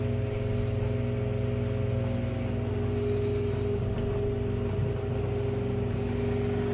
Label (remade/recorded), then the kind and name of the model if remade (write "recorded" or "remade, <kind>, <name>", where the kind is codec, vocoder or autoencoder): recorded